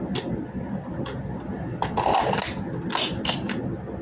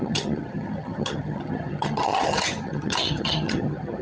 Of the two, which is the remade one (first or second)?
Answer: second